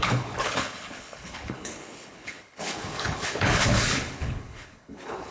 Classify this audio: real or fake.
fake